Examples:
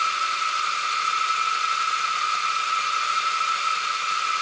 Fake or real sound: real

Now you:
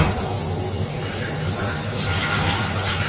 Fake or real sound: real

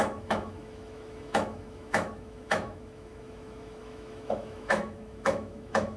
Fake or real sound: fake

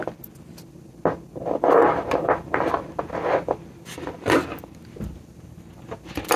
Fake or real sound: real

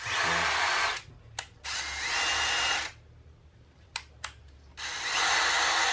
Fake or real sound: real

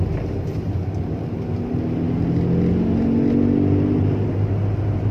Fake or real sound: real